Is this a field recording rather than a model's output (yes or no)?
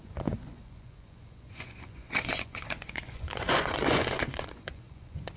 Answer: no